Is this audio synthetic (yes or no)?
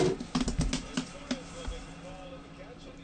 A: no